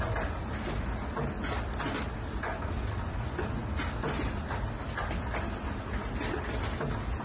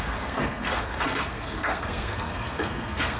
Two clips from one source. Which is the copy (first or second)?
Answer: second